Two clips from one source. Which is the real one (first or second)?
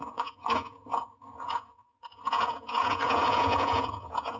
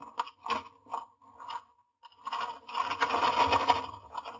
second